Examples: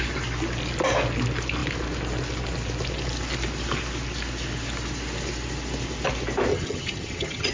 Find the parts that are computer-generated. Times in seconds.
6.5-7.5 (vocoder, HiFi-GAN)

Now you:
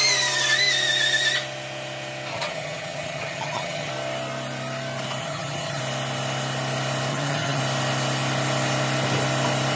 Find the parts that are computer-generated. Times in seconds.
2.3-3.9 (vocoder, HiFi-GAN); 5.2-5.8; 7.1-7.6

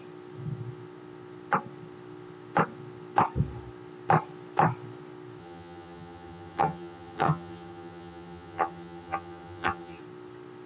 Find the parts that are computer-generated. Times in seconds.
5.4-10.0 (vocoder, HiFi-GAN)